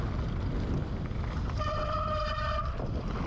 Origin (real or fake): real